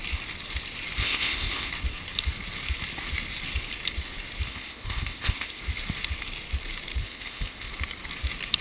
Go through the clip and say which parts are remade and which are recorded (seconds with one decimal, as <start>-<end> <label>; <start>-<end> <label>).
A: 0.0-1.0 recorded; 1.0-1.7 remade; 1.7-4.5 recorded; 4.5-5.6 remade; 5.6-7.0 recorded; 7.0-7.7 remade; 7.7-8.6 recorded